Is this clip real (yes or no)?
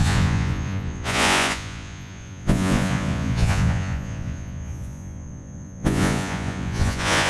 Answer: no